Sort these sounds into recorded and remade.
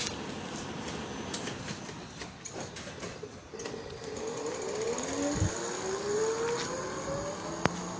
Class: recorded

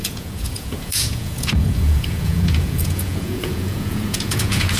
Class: remade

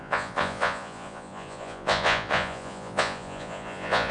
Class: remade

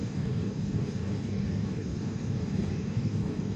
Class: remade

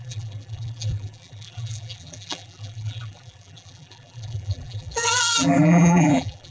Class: remade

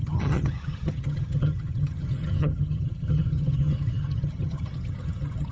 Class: remade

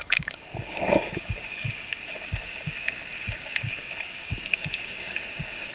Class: remade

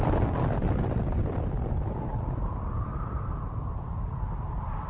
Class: recorded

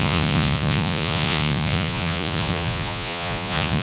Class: remade